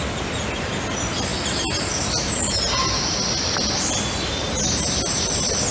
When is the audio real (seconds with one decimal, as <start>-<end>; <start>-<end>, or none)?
0.0-5.7